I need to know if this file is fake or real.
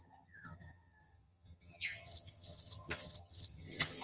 fake